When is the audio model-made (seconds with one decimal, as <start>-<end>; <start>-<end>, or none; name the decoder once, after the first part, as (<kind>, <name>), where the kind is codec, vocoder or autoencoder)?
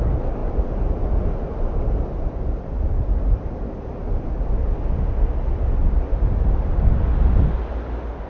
none